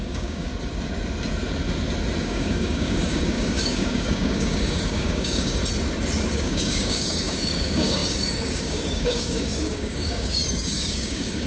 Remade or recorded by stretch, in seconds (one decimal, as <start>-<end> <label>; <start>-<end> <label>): 0.0-0.5 remade; 0.5-2.2 recorded; 2.2-5.6 remade; 5.6-6.3 recorded; 6.3-11.5 remade